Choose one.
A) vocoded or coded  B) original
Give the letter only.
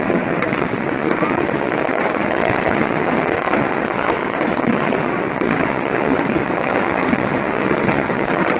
A